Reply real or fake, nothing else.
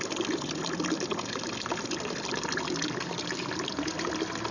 real